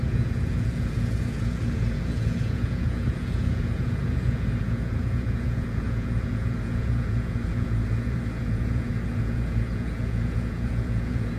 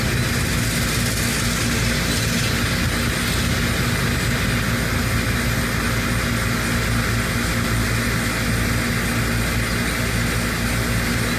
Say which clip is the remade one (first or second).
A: first